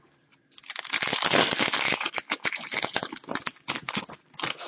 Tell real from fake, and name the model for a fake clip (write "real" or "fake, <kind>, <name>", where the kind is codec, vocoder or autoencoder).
real